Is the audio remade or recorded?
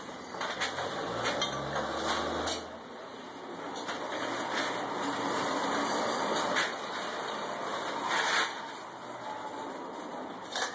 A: recorded